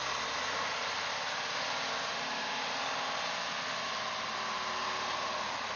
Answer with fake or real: real